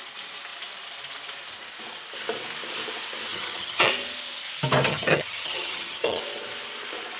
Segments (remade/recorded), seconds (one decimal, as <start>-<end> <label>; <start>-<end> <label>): 0.0-3.3 recorded; 3.3-3.9 remade; 3.9-4.9 recorded; 4.9-6.2 remade; 6.2-7.2 recorded